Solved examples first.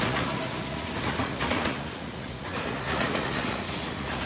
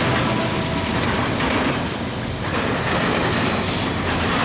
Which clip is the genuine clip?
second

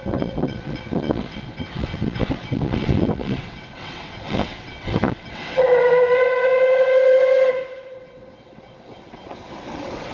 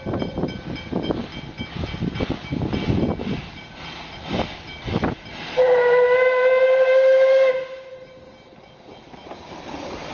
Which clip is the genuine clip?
second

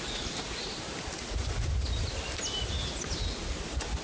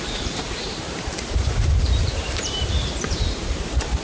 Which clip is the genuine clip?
first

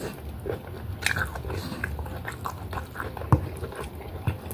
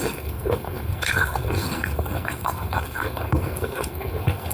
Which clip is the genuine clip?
first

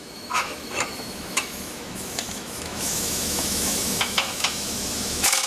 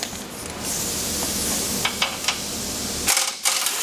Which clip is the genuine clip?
second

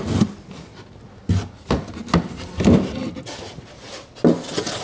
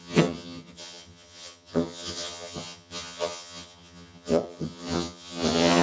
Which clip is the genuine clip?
first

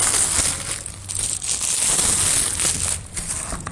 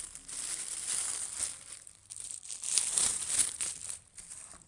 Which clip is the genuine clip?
first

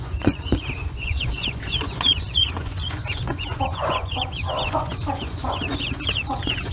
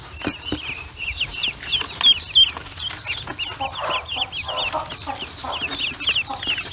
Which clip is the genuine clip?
second